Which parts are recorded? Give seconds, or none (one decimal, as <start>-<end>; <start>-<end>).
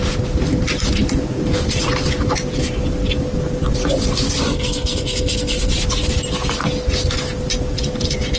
0.0-4.4; 5.7-8.4